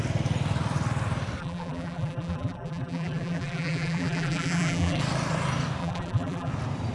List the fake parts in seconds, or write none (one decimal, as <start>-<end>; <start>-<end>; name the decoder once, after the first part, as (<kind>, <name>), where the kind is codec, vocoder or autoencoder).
1.4-5.0 (vocoder, BigVGAN v2); 5.8-6.5